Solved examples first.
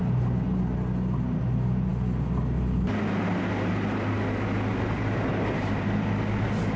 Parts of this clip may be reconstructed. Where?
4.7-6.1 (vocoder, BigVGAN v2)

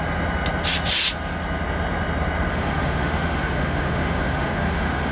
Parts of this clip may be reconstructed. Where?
2.5-5.1 (autoencoder, DAC-VAE)

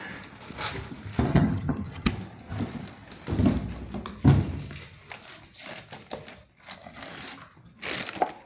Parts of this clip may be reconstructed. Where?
1.3-2.1 (vocoder, HiFi-GAN)